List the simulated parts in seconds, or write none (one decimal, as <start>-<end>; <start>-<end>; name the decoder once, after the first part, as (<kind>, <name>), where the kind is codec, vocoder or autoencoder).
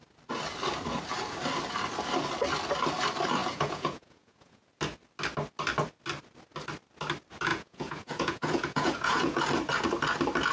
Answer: 3.4-4.7 (vocoder, Vocos); 7.5-9.4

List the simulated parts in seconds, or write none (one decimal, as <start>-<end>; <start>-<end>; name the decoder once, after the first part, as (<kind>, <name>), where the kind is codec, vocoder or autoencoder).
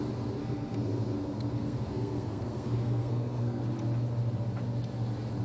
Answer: 0.4-3.6 (codec, SNAC)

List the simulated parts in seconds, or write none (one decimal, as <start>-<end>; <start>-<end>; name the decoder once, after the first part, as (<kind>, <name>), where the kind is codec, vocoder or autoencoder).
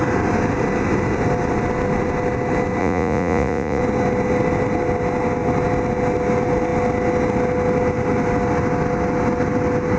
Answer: 2.8-3.8 (vocoder, Vocos)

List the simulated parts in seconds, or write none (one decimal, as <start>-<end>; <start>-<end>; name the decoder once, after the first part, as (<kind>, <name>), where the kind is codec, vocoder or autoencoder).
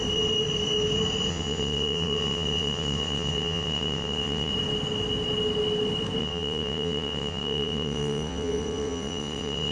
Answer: 1.3-4.5 (vocoder, WaveNeXt); 6.2-9.7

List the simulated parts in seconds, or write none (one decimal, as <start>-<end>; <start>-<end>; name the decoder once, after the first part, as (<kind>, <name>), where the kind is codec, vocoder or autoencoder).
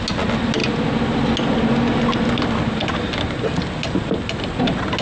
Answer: none